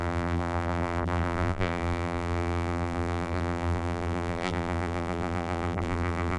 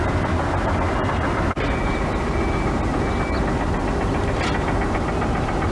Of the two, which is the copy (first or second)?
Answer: first